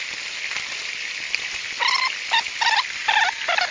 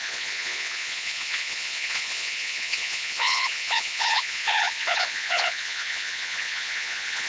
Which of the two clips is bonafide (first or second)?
first